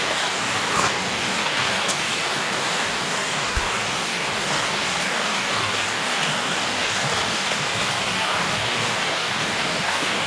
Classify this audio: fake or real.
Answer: fake